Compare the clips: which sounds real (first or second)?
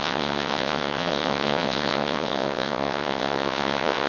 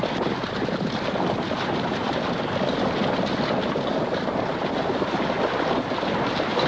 second